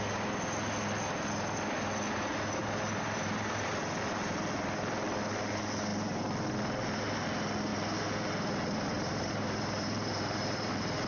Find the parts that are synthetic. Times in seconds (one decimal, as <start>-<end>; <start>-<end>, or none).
2.6-3.7; 7.7-10.7